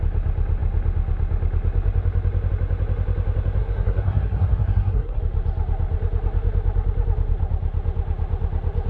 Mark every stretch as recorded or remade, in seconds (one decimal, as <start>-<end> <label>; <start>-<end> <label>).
0.0-3.6 recorded; 3.6-5.2 remade; 5.2-8.9 recorded